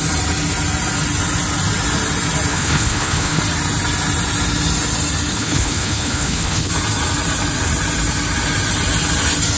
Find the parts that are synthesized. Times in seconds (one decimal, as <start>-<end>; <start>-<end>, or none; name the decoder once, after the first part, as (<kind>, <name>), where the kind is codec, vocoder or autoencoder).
2.5-3.4 (codec, HILCodec); 5.3-6.7